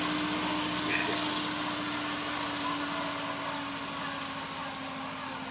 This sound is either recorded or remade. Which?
recorded